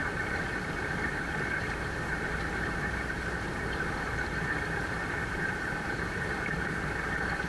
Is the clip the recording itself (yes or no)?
no